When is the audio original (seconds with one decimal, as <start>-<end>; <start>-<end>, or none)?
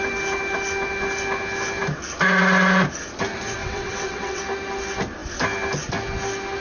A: 0.0-3.6; 4.4-6.6